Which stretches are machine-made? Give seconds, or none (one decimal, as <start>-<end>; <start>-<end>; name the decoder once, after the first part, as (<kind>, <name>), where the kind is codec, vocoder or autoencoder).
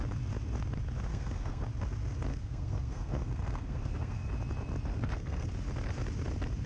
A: 1.1-1.6 (codec, SNAC); 2.3-4.3; 4.9-5.5